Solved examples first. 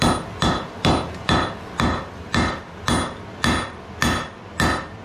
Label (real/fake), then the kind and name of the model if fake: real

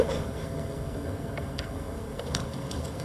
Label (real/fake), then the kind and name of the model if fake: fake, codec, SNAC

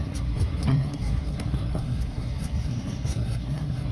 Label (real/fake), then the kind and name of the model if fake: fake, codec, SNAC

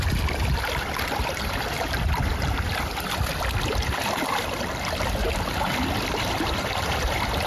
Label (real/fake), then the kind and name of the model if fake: fake, vocoder, BigVGAN v2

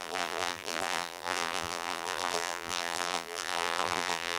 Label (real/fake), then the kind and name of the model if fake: fake, vocoder, BigVGAN v2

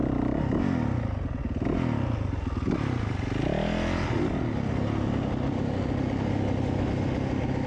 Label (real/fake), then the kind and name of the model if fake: real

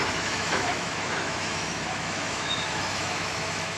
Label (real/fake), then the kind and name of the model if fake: fake, autoencoder, DAC-VAE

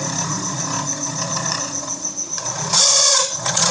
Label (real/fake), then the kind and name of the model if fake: fake, vocoder, Vocos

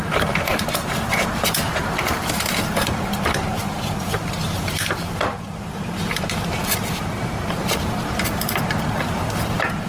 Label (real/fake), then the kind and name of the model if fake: fake, vocoder, BigVGAN v2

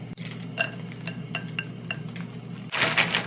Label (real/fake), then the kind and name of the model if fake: real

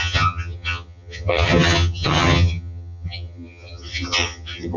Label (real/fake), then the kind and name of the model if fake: fake, vocoder, HiFi-GAN